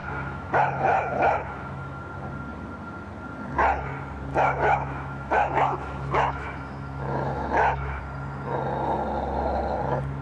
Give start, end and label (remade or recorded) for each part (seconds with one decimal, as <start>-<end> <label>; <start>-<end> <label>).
0.0-2.0 remade; 2.0-4.3 recorded; 4.3-8.0 remade; 8.0-10.2 recorded